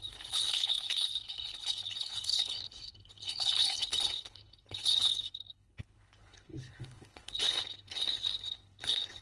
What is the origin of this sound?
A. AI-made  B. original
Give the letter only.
A